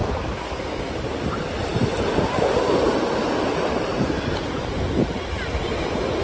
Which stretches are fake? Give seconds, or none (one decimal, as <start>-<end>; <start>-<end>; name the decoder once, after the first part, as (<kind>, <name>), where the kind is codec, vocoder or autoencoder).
none